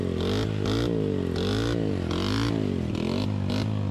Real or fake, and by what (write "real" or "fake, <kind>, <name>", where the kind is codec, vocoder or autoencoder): real